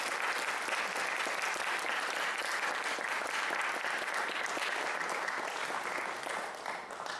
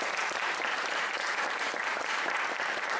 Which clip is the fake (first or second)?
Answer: second